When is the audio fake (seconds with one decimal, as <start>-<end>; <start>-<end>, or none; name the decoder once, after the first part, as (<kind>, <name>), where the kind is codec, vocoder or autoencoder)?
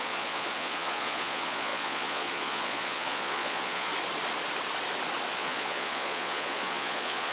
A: 0.0-3.9 (vocoder, Vocos); 5.3-7.3